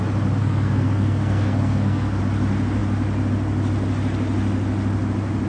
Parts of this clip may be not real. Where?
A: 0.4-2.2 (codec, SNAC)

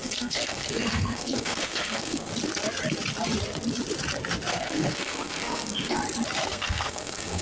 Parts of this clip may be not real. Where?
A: 0.0-2.3 (codec, SNAC); 4.5-6.0; 6.5-7.4

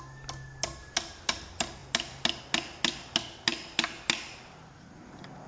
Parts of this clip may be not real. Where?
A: none

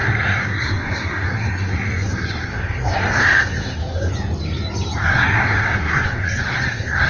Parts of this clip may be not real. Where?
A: 0.0-4.1 (codec, SNAC); 5.0-7.1

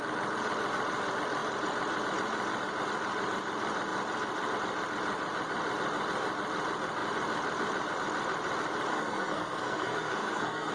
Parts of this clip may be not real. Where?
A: 8.9-10.7 (codec, SNAC)